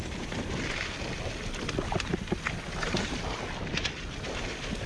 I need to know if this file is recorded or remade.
recorded